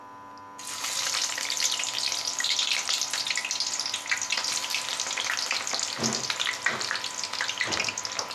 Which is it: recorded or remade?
recorded